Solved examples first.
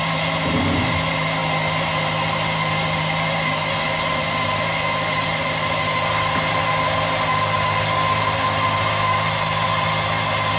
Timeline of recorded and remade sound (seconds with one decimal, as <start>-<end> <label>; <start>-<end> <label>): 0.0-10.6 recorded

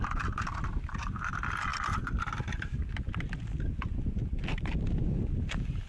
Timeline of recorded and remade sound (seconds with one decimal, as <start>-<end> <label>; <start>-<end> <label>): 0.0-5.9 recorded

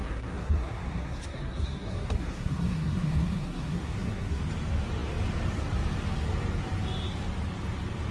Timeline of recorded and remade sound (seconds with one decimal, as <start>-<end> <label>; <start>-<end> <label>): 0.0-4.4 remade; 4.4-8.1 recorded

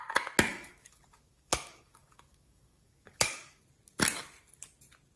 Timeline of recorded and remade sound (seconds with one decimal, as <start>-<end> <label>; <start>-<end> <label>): 0.0-0.5 recorded; 0.5-3.6 remade; 3.6-5.2 recorded

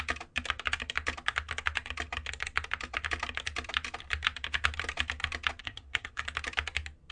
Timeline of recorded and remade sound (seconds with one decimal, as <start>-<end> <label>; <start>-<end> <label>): 0.0-5.6 recorded; 5.6-6.2 remade; 6.2-7.1 recorded

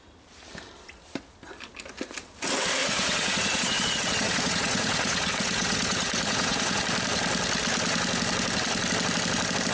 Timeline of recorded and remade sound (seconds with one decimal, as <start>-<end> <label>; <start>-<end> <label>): 0.0-2.8 recorded; 2.8-6.8 remade; 6.8-9.7 recorded